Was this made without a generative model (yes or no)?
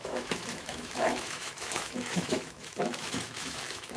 no